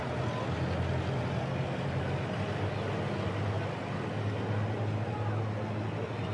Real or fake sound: real